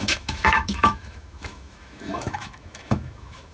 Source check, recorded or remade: remade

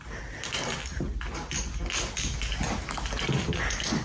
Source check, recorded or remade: recorded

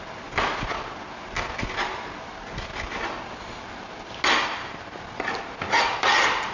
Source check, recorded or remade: recorded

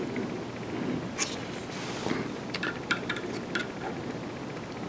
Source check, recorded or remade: recorded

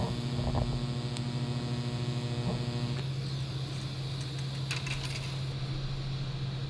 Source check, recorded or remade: recorded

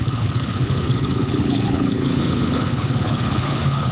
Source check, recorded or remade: remade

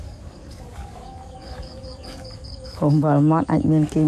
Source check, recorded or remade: remade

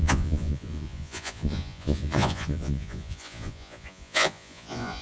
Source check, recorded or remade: remade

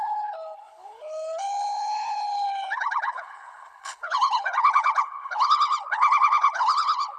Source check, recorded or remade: remade